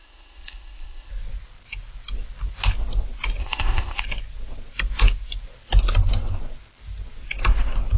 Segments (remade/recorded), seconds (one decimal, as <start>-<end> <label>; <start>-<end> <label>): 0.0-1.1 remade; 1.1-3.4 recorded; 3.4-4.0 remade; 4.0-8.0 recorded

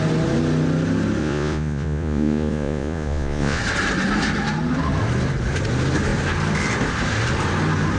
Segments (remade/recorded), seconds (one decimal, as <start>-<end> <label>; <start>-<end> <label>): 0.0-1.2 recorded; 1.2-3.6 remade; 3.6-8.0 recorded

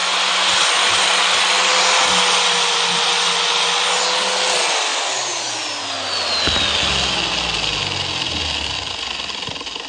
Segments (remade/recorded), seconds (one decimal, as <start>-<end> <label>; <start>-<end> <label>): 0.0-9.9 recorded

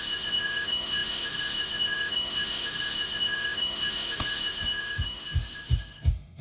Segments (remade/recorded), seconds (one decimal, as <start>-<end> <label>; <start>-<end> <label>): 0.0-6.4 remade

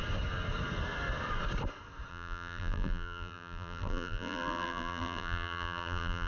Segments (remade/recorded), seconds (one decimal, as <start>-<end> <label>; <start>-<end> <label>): 0.0-2.1 recorded; 2.1-6.3 remade